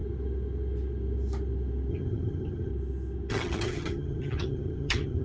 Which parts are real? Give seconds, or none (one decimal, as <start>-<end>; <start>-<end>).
0.0-1.9; 2.7-3.3

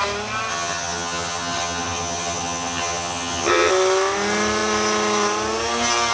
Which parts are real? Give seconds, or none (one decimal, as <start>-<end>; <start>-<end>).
0.0-0.5; 3.7-6.1

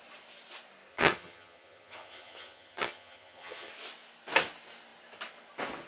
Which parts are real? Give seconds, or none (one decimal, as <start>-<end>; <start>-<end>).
0.0-0.9; 3.7-5.9

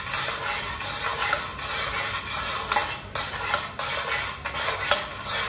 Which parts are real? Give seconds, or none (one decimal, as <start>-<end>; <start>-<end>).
0.0-5.5

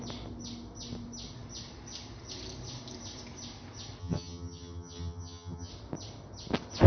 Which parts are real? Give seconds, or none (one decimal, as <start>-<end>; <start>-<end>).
0.0-4.0; 5.7-6.9

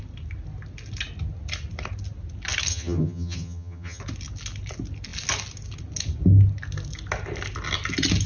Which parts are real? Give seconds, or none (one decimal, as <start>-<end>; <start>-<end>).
0.0-2.7; 4.0-8.3